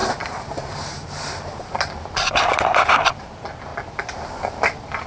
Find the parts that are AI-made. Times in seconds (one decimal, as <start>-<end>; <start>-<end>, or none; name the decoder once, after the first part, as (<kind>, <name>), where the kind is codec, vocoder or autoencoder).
0.0-3.1 (vocoder, BigVGAN v2)